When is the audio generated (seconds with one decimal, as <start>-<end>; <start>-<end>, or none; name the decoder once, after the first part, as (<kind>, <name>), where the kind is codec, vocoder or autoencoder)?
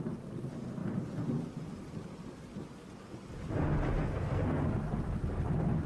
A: 4.0-4.6 (codec, SNAC)